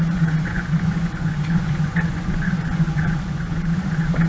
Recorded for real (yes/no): no